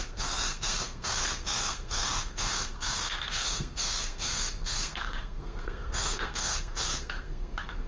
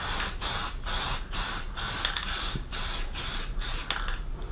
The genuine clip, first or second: second